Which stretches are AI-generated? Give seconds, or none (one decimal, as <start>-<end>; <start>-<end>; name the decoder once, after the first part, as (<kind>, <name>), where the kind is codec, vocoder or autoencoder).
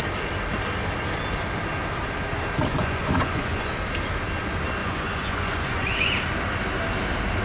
2.7-3.7 (vocoder, Vocos); 4.8-6.1